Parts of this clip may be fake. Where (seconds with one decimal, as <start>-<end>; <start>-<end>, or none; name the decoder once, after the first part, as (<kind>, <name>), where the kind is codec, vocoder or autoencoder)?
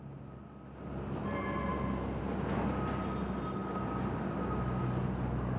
none